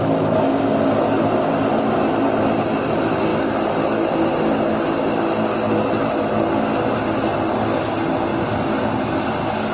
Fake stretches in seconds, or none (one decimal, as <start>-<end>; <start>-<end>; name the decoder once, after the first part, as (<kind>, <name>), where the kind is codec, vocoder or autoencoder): none